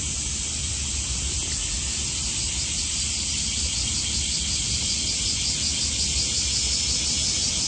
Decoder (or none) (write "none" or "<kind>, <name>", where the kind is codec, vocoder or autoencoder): none